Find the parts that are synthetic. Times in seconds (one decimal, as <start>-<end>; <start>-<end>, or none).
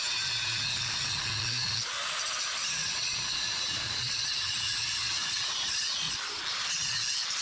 2.8-6.4